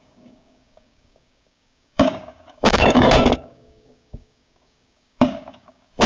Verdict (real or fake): fake